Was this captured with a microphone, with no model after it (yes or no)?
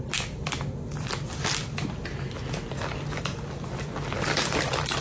yes